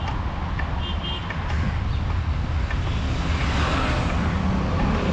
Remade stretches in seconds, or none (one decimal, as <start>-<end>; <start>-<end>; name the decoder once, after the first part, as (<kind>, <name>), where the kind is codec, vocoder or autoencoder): none